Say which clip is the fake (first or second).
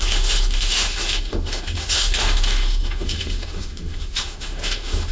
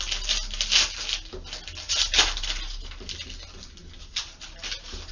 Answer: first